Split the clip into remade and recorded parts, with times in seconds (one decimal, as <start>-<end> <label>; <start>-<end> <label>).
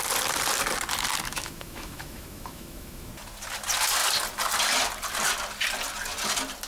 0.0-1.3 recorded; 1.3-3.1 remade; 3.1-6.7 recorded